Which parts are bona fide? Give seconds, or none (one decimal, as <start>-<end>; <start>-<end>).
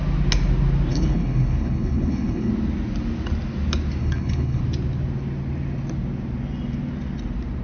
0.0-0.9; 2.5-4.0; 4.6-7.6